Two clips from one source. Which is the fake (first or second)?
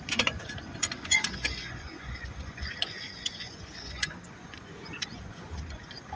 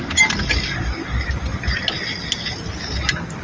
first